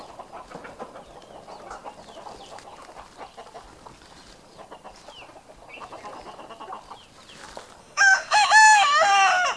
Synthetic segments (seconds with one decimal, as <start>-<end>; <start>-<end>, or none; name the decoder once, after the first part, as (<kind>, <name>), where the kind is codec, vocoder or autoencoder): 7.8-9.1 (autoencoder, DAC-VAE)